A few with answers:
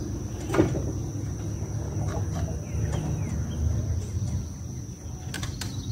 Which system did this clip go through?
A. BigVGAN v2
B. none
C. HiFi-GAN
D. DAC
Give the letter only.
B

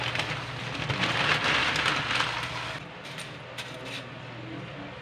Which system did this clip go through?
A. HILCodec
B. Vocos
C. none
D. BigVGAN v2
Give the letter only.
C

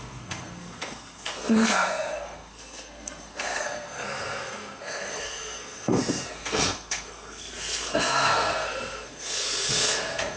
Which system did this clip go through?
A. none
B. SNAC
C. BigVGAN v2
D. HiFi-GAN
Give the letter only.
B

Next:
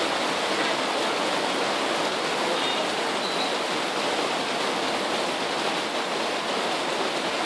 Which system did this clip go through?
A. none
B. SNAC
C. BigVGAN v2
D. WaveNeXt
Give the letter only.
A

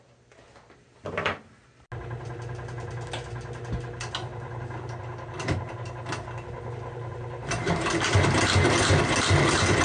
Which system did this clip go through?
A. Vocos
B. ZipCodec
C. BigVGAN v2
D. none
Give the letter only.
D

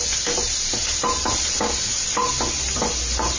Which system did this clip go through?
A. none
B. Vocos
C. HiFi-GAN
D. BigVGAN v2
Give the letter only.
A